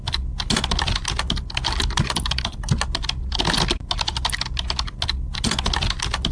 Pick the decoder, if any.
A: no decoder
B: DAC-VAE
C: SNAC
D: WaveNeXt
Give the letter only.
A